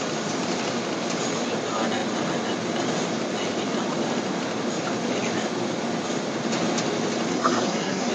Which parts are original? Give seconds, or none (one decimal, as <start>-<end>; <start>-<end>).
0.0-7.3